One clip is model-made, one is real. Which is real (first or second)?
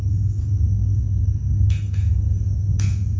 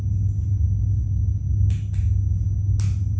second